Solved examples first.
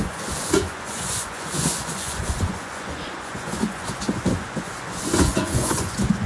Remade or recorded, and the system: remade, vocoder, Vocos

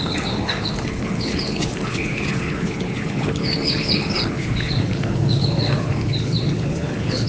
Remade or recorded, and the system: remade, codec, HILCodec